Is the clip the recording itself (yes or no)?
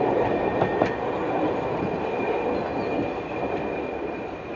yes